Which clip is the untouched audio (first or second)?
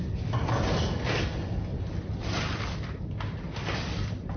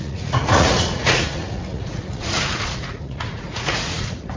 first